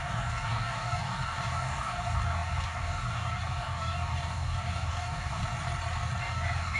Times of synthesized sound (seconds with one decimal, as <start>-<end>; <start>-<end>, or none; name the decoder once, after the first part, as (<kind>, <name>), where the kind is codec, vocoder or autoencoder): 0.0-5.4 (codec, DAC); 6.2-6.8